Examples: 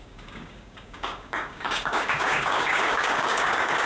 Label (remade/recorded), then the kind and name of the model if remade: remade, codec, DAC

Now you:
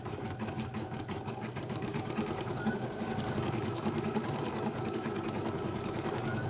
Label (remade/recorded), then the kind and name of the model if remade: remade, codec, DAC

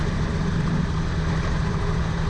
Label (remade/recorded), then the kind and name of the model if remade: recorded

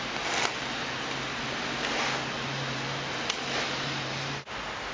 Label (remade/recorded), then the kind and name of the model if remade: recorded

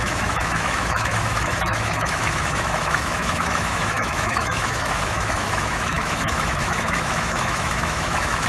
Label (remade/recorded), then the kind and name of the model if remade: remade, autoencoder, DAC-VAE